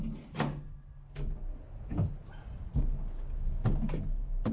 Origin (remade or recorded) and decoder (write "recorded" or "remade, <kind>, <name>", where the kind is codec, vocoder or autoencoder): recorded